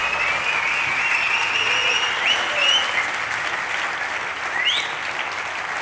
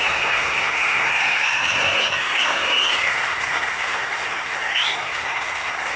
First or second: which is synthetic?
second